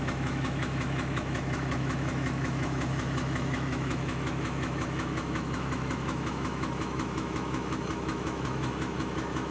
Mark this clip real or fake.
fake